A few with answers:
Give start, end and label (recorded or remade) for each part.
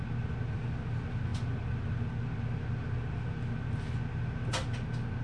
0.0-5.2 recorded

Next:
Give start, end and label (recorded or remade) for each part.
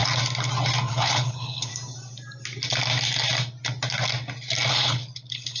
0.0-0.9 recorded; 0.9-1.7 remade; 1.7-4.7 recorded; 4.7-5.6 remade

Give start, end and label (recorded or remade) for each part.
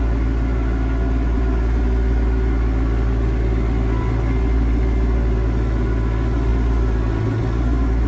0.0-8.1 recorded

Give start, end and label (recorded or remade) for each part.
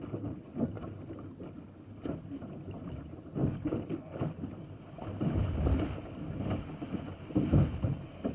0.0-8.3 recorded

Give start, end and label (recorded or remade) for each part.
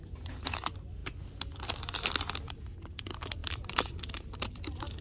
0.0-5.0 recorded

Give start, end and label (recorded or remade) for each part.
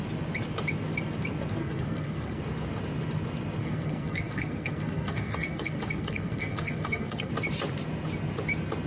0.0-1.6 recorded; 1.6-2.4 remade; 2.4-3.6 recorded; 3.6-7.3 remade; 7.3-8.9 recorded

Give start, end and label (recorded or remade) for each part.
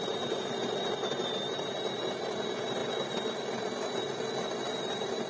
0.0-5.3 recorded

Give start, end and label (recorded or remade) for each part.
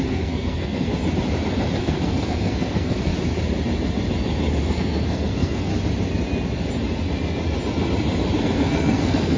0.0-0.9 remade; 0.9-1.8 recorded; 1.8-3.1 remade; 3.1-4.6 recorded; 4.6-5.7 remade; 5.7-8.4 recorded; 8.4-9.4 remade